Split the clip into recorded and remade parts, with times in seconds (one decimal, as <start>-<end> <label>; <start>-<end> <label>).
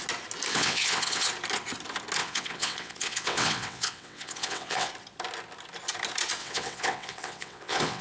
0.0-0.5 recorded; 0.5-1.3 remade; 1.3-2.2 recorded; 2.2-4.9 remade; 4.9-6.4 recorded; 6.4-8.0 remade